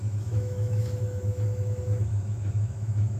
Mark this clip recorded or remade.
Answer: remade